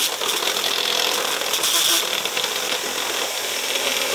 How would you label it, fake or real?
real